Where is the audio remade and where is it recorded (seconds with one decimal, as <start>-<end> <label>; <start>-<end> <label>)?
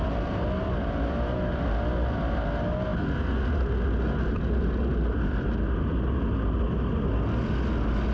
0.0-8.1 recorded